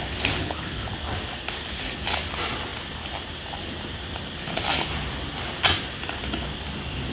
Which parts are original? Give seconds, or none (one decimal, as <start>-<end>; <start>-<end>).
0.0-0.4; 0.9-7.1